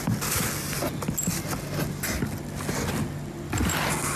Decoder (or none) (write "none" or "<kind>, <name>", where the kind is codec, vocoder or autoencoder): none